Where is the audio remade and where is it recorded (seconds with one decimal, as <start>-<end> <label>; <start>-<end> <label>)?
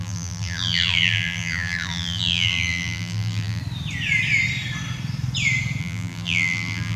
0.0-3.6 remade; 3.6-5.8 recorded; 5.8-7.0 remade